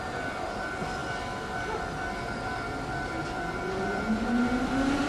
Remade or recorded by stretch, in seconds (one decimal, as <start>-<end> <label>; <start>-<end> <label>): 0.0-5.1 recorded